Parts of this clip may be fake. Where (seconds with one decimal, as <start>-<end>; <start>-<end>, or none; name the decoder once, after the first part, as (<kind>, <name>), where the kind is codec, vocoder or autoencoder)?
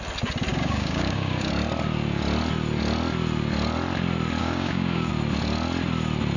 0.5-1.5 (codec, DAC); 4.4-5.1